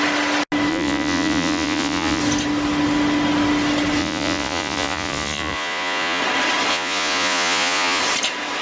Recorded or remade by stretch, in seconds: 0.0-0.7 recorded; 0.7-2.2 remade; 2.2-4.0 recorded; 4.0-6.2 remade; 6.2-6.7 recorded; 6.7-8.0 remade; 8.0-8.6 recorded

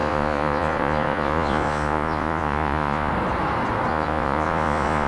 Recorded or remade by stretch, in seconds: 0.0-3.1 remade; 3.1-3.9 recorded; 3.9-5.1 remade

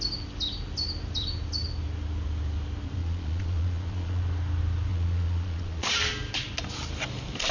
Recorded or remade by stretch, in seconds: 0.0-3.0 recorded; 3.0-4.2 remade; 4.2-4.9 recorded; 4.9-5.9 remade; 5.9-7.5 recorded

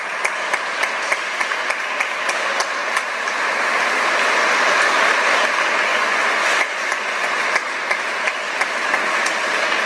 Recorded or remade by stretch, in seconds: 0.0-5.9 recorded; 5.9-7.4 remade; 7.4-9.9 recorded

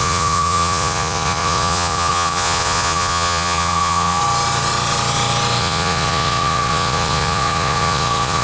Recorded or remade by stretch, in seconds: 0.0-4.2 remade; 4.2-5.6 recorded; 5.6-8.4 remade

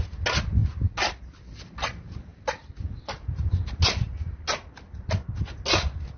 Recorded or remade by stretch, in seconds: 0.0-6.2 recorded

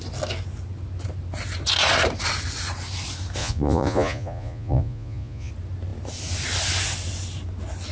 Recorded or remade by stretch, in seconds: 0.0-3.4 recorded; 3.4-5.5 remade; 5.5-7.9 recorded

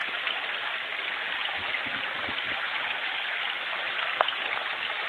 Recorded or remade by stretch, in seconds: 0.0-5.1 recorded